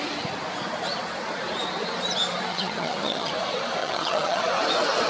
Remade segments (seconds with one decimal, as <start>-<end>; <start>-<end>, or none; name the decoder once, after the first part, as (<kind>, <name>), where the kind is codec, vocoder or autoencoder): 2.5-3.3 (vocoder, HiFi-GAN); 3.8-4.4